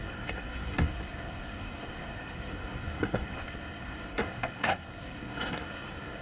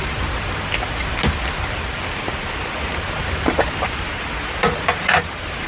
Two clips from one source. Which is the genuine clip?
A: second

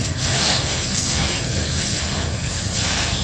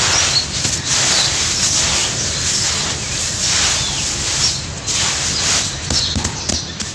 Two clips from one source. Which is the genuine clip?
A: second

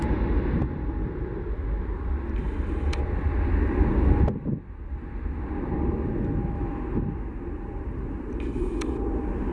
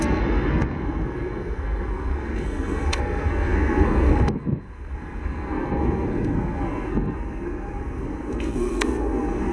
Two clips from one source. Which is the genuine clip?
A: first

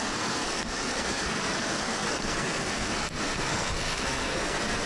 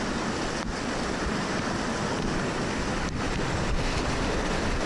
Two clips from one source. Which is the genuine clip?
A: second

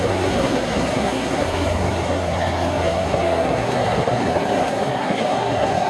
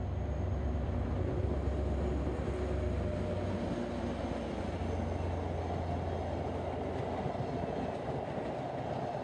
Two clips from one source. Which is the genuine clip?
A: second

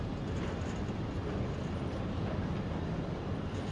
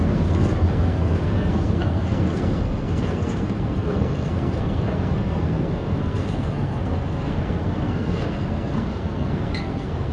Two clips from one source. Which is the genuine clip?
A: first